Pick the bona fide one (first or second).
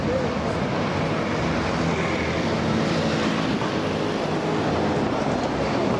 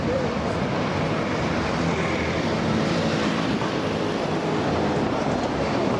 first